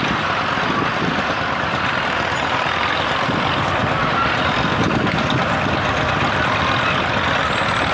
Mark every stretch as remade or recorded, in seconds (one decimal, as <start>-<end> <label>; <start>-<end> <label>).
0.0-7.9 recorded